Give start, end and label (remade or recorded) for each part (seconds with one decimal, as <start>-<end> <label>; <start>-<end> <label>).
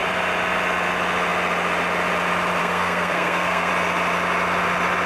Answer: 0.0-2.6 recorded; 2.6-3.7 remade; 3.7-5.1 recorded